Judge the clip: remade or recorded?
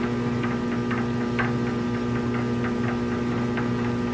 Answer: remade